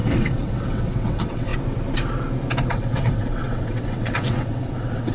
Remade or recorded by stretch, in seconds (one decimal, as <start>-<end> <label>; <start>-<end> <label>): 0.0-1.5 remade; 1.5-2.7 recorded; 2.7-5.1 remade